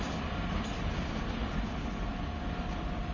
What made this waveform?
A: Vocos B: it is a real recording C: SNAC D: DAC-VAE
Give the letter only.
B